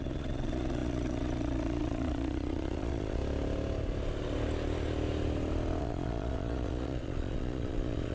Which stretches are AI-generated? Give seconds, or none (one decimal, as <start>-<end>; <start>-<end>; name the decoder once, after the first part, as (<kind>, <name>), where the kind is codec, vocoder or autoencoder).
0.0-3.2 (vocoder, Vocos); 5.8-8.1